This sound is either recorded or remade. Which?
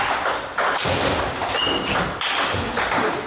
recorded